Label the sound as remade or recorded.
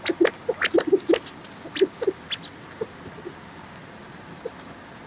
recorded